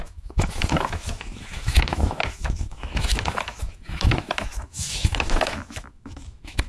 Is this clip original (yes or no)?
no